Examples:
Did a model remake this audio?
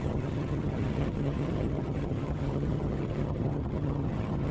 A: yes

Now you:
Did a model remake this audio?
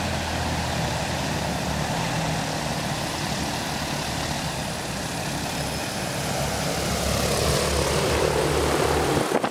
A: no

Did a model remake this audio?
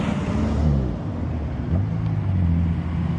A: no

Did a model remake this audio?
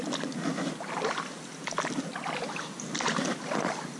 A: no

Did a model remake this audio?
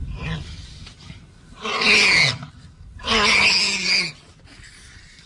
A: no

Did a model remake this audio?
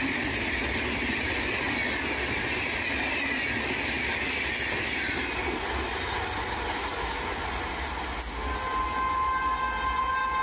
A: no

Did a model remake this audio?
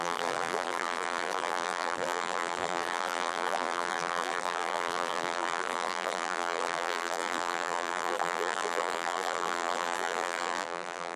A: yes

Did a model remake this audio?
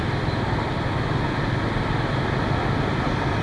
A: no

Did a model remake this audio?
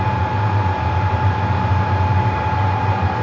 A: yes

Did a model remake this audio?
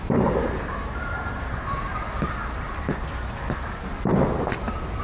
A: no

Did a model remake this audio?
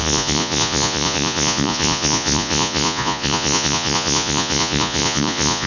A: yes